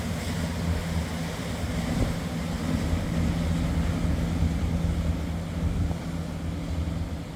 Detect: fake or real real